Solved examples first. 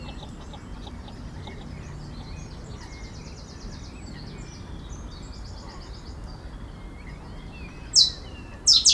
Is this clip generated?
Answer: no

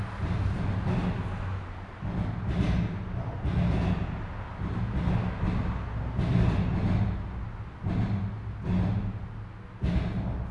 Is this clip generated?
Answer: no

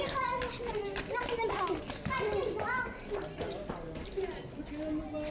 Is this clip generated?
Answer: no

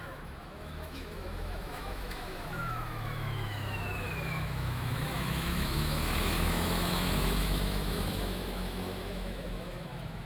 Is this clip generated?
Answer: yes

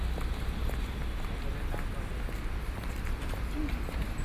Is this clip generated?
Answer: no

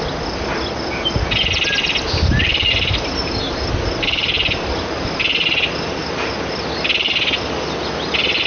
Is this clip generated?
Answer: no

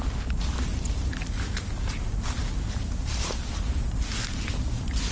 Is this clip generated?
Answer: no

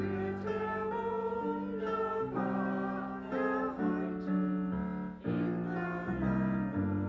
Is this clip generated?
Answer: no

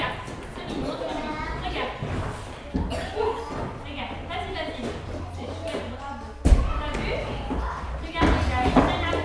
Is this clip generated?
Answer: no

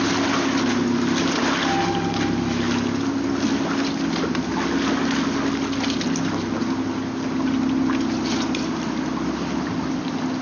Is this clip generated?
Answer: no